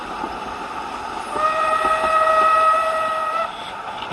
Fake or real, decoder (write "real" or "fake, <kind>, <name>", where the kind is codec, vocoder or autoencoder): real